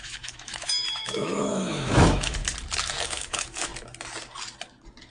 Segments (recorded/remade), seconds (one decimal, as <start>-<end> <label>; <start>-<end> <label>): 0.0-2.4 remade; 2.4-3.0 recorded; 3.0-3.7 remade; 3.7-5.1 recorded